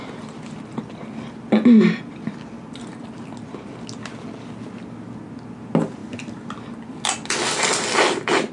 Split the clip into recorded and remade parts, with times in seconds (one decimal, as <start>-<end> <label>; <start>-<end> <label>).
0.0-8.5 recorded